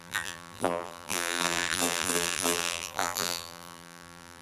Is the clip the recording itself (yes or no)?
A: no